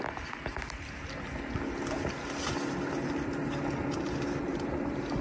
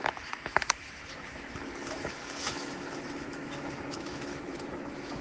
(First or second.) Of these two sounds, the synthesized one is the second